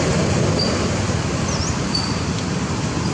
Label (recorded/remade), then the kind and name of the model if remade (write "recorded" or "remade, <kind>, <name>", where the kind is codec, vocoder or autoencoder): recorded